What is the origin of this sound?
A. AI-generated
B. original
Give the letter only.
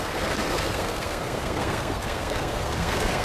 A